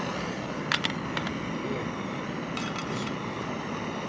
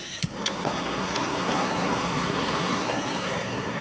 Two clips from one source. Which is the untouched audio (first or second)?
first